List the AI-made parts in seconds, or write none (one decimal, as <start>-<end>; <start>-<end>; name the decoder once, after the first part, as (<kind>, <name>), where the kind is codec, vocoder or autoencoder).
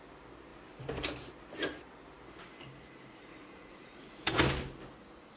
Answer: 3.3-4.4 (vocoder, Vocos)